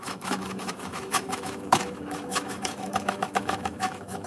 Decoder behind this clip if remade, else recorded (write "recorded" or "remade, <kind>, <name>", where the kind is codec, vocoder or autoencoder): remade, autoencoder, DAC-VAE